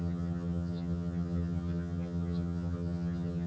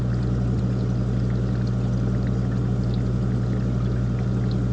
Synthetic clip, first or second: first